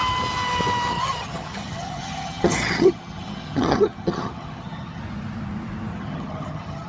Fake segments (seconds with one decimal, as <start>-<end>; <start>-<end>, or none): 0.9-5.0; 5.9-6.9